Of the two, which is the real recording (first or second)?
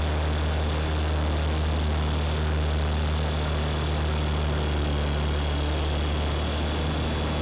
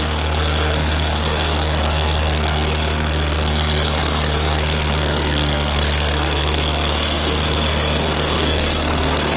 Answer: first